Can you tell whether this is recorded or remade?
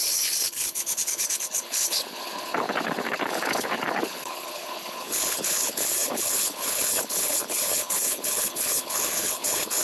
remade